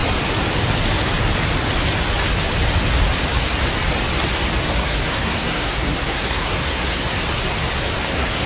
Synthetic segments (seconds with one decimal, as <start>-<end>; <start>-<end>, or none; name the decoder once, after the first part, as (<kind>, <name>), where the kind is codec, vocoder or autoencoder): 4.7-7.2 (codec, SNAC); 8.1-8.5